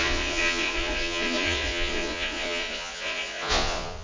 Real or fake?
fake